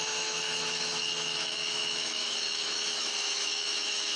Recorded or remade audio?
remade